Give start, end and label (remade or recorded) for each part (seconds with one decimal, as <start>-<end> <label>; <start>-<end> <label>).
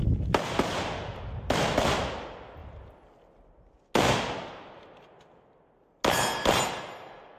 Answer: 0.0-7.4 recorded